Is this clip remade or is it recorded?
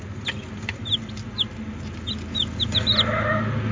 recorded